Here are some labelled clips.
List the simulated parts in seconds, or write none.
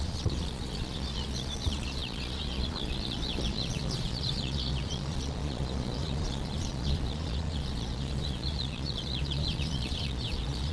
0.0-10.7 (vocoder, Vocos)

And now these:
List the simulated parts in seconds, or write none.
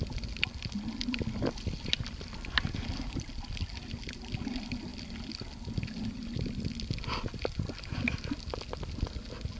none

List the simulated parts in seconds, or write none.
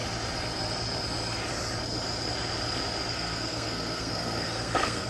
3.1-5.1 (codec, SNAC)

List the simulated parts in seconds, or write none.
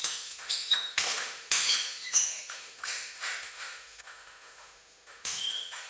0.0-5.9 (autoencoder, DAC-VAE)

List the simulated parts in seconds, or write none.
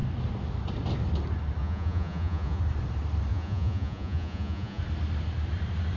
1.6-2.6 (vocoder, Vocos); 3.3-4.8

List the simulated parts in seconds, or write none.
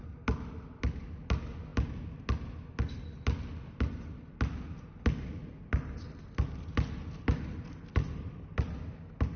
none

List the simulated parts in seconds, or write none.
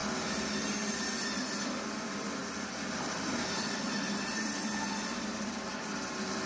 2.4-6.5 (vocoder, BigVGAN v2)